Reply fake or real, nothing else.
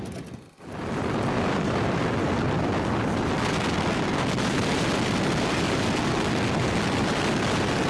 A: real